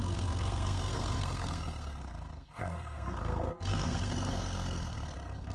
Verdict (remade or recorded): remade